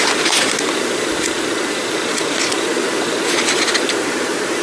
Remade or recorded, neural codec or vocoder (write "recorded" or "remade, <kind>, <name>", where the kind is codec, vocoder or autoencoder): remade, vocoder, BigVGAN v2